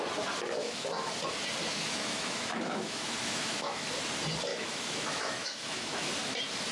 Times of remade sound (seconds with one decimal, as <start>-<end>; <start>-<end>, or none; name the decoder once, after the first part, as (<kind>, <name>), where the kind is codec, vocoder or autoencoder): 0.6-1.1 (autoencoder, DAC-VAE); 1.7-3.8; 4.5-6.1